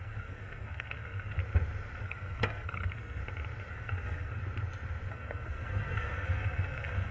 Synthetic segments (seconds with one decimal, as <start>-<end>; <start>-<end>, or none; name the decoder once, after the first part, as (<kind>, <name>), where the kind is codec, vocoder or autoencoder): 0.0-1.4 (codec, SNAC); 2.0-3.2; 3.7-4.4; 5.1-7.1